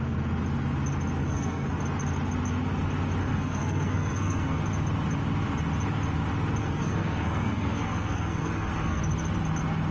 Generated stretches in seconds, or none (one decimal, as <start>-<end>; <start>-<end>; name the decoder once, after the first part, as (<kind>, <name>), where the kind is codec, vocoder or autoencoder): 1.2-1.8 (codec, SNAC); 3.2-4.6; 6.6-9.0